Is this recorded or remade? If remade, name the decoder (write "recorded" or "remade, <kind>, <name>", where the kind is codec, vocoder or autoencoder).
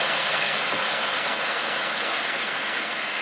remade, codec, SNAC